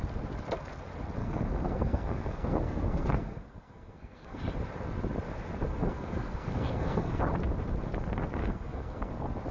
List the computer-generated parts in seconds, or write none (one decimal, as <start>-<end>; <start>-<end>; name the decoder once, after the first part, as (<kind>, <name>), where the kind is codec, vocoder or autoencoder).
1.2-4.4 (codec, SNAC); 5.7-7.2; 8.4-9.1